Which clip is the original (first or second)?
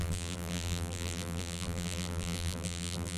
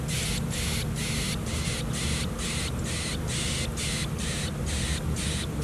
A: second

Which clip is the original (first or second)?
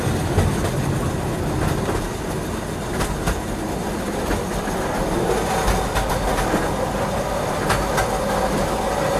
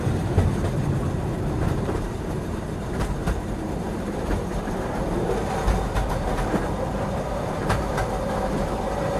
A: first